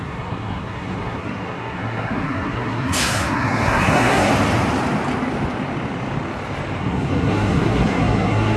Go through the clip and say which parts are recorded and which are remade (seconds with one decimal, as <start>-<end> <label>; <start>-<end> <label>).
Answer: 0.0-4.3 remade; 4.3-6.8 recorded; 6.8-8.6 remade